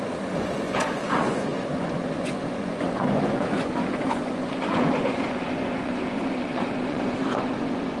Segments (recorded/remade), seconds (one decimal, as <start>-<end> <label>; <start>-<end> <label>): 0.0-8.0 remade